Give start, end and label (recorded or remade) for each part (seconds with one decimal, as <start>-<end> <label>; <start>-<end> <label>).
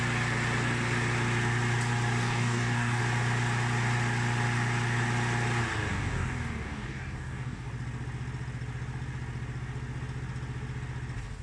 0.0-2.2 recorded; 2.2-3.0 remade; 3.0-5.9 recorded; 5.9-7.7 remade; 7.7-11.4 recorded